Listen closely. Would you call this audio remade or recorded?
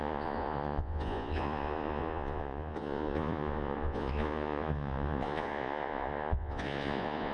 remade